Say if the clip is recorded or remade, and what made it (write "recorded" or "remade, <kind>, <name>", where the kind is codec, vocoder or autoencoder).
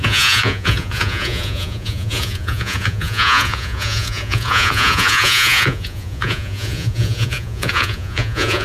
remade, vocoder, Vocos